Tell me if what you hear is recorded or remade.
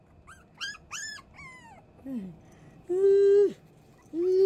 recorded